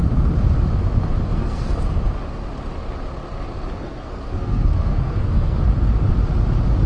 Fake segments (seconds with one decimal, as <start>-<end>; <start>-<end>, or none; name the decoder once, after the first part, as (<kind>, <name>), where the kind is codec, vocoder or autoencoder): 1.3-1.8 (codec, SNAC); 3.8-5.6